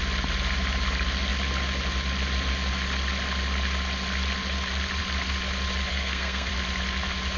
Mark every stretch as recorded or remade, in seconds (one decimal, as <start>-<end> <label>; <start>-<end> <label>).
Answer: 0.0-5.9 recorded; 5.9-6.5 remade; 6.5-7.4 recorded